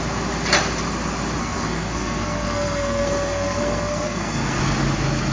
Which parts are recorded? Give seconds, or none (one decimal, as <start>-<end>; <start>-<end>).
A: 0.0-1.4; 4.6-5.3